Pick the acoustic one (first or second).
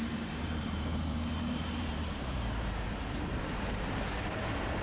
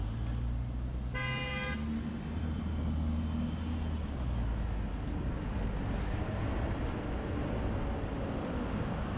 second